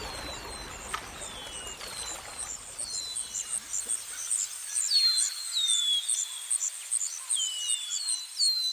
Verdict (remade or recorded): recorded